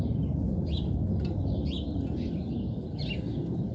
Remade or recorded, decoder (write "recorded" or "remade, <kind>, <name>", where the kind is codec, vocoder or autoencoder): recorded